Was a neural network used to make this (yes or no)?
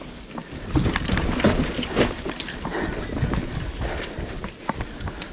no